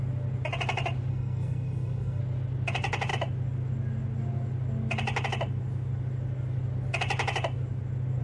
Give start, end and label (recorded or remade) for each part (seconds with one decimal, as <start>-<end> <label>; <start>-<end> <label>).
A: 0.0-1.1 recorded; 1.1-2.2 remade; 2.2-8.2 recorded